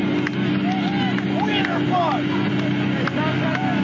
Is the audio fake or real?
real